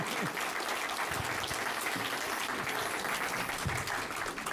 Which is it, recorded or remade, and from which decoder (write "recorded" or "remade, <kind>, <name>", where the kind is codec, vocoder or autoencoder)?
recorded